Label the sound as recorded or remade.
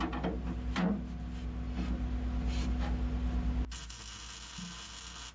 recorded